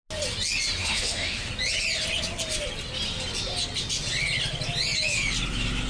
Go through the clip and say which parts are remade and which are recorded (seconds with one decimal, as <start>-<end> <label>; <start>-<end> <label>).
0.0-0.8 recorded; 0.8-1.5 remade; 1.5-5.9 recorded